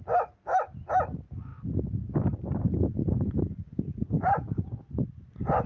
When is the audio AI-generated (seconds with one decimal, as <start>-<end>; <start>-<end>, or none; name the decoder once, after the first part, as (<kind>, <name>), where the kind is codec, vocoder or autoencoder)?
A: none